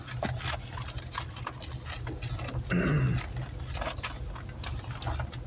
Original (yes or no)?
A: yes